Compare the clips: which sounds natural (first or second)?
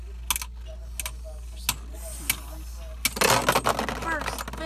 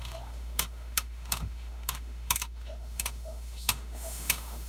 first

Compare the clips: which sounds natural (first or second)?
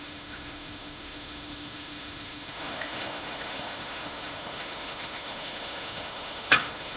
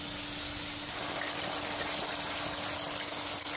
second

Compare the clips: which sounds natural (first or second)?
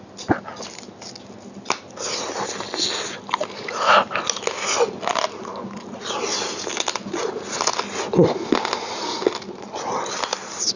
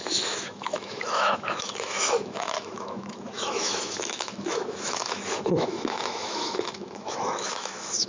first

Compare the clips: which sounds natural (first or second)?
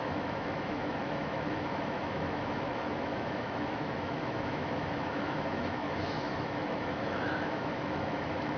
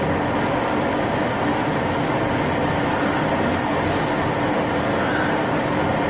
second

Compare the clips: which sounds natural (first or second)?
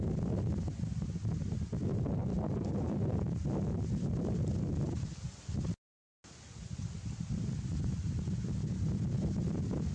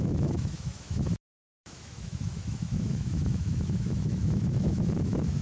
first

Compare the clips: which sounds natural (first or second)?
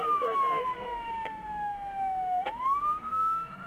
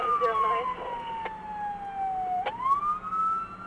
second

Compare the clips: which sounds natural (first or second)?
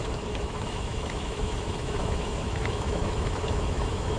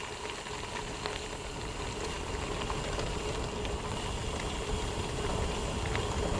second